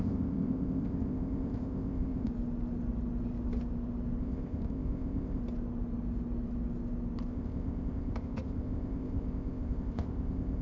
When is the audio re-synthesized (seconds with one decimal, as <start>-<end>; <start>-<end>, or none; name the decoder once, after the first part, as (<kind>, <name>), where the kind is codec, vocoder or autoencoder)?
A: 0.0-2.3 (codec, ZipCodec); 4.2-5.4; 7.3-10.6